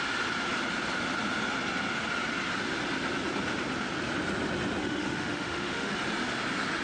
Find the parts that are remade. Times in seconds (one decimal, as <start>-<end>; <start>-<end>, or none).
4.8-5.9